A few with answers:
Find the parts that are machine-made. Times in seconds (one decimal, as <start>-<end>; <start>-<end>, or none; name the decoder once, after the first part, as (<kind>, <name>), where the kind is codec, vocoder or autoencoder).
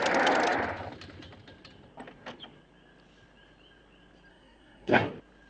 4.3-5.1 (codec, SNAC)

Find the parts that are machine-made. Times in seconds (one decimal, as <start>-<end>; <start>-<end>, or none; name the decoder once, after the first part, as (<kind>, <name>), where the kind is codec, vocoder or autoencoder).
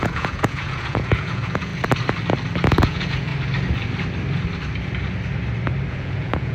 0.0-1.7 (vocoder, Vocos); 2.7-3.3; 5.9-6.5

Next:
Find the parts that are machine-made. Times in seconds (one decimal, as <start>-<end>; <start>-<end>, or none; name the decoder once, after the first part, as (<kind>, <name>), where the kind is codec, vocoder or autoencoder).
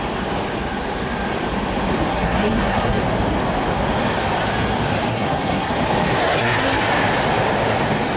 2.1-3.0 (codec, SNAC); 5.1-5.7; 6.2-6.8